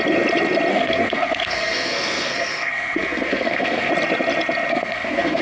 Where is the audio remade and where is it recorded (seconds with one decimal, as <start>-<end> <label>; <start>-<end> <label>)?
0.0-0.7 recorded; 0.7-3.9 remade; 3.9-4.7 recorded; 4.7-5.4 remade